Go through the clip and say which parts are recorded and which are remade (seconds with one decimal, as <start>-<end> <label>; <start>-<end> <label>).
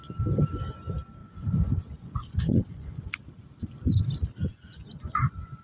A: 0.0-1.2 recorded; 1.2-3.1 remade; 3.1-4.5 recorded; 4.5-5.6 remade